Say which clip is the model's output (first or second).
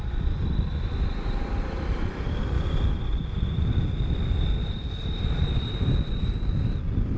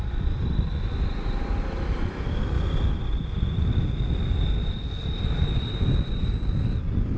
first